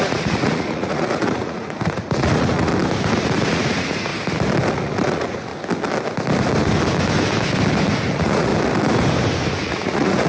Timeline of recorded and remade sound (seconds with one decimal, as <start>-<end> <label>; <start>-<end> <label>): 0.0-2.7 remade; 2.7-3.5 recorded; 3.5-4.1 remade; 4.1-4.7 recorded; 4.7-5.5 remade; 5.5-8.1 recorded; 8.1-8.5 remade; 8.5-9.5 recorded; 9.5-10.3 remade